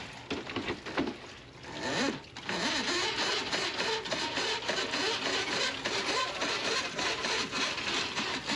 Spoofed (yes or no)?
no